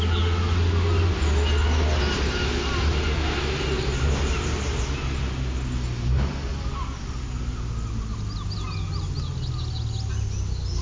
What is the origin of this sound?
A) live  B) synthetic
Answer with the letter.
A